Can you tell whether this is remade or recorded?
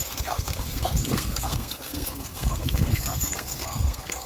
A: remade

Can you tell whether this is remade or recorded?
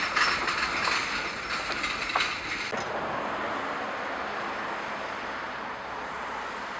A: recorded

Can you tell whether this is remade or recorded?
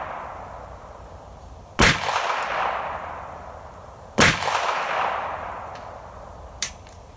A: recorded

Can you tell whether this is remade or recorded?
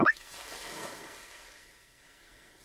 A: remade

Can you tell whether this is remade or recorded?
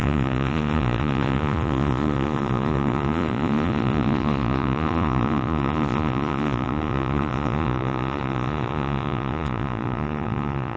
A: remade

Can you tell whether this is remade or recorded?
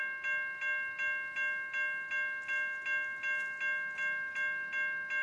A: recorded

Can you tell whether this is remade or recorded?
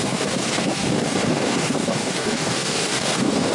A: remade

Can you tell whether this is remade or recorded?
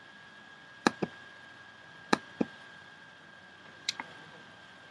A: remade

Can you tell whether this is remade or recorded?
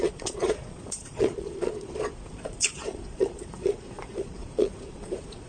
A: remade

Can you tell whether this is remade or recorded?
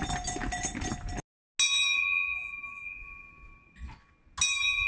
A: recorded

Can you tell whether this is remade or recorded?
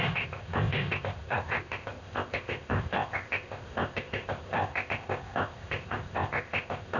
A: remade